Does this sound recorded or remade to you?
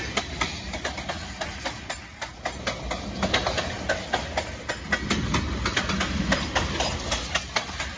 recorded